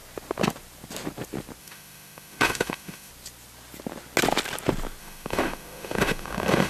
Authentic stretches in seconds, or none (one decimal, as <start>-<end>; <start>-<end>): 0.0-1.6; 3.1-5.0